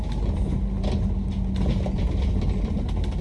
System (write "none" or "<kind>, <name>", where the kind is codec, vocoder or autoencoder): none